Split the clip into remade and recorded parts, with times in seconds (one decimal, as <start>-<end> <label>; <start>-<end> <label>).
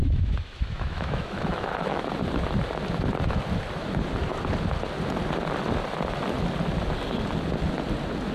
0.0-2.1 remade; 2.1-8.3 recorded